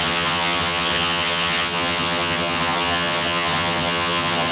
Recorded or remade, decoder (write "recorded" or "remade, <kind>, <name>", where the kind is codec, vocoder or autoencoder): remade, vocoder, HiFi-GAN